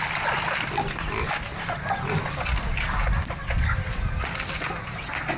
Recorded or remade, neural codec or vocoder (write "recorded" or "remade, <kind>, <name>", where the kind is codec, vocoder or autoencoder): recorded